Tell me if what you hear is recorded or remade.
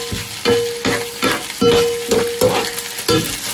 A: recorded